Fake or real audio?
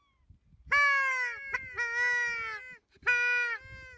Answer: real